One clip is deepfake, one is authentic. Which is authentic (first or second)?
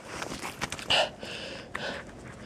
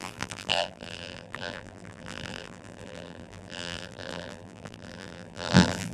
first